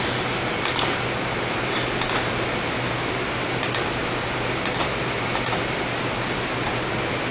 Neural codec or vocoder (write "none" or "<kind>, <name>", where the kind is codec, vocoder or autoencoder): none